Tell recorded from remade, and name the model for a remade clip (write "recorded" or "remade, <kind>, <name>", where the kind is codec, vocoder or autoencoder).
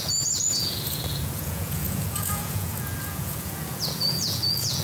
remade, vocoder, Vocos